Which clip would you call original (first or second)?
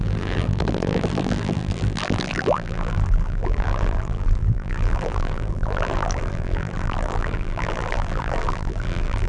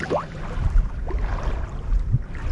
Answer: second